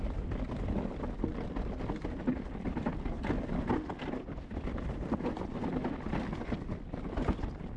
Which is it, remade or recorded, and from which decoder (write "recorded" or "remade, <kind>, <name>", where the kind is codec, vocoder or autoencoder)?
recorded